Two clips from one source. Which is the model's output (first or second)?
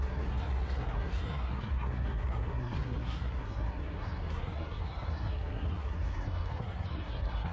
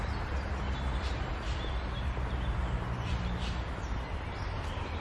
first